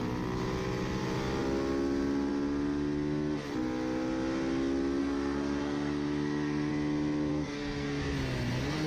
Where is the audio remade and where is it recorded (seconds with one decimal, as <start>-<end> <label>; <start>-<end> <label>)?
0.0-5.0 recorded; 5.0-6.7 remade; 6.7-7.3 recorded; 7.3-8.0 remade; 8.0-8.9 recorded